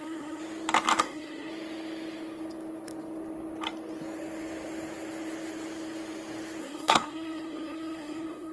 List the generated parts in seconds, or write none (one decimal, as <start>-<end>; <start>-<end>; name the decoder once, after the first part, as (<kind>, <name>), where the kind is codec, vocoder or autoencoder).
0.0-0.4 (codec, SNAC); 1.0-1.5; 6.6-8.5